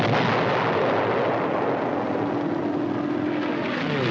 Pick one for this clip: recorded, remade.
recorded